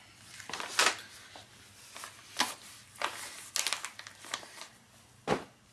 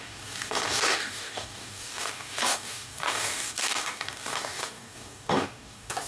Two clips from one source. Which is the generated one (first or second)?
second